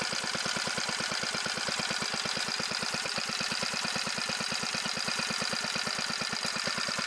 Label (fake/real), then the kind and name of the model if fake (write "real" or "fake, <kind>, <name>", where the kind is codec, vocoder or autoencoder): real